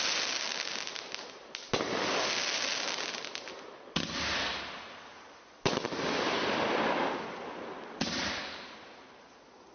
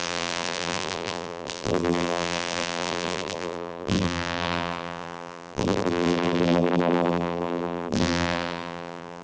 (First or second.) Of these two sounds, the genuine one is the first